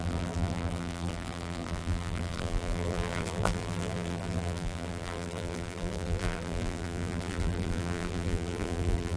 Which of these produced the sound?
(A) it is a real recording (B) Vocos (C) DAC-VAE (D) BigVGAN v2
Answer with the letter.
D